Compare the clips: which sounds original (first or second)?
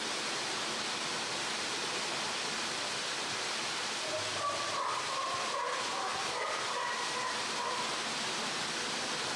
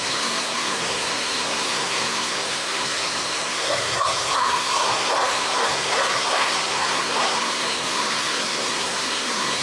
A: first